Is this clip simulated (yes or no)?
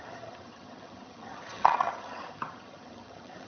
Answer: yes